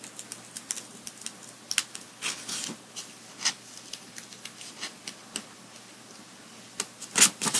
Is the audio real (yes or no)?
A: yes